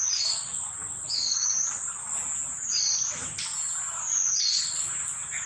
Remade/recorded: recorded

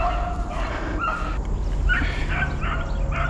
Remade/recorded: recorded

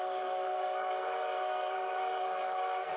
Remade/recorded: remade